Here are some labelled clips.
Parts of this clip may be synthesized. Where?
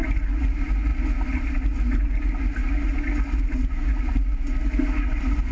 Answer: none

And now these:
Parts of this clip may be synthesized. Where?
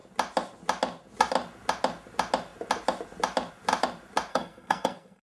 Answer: 4.3-5.3 (codec, SNAC)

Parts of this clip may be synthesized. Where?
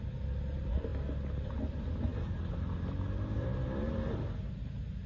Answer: none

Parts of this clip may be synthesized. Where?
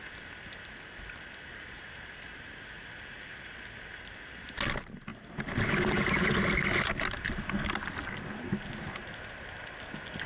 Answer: none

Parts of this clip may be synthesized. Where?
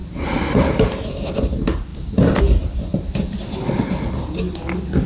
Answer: 0.0-1.4 (vocoder, BigVGAN v2); 2.9-4.0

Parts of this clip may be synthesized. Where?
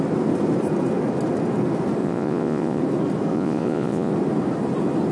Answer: 2.0-2.8 (vocoder, Vocos); 3.3-4.1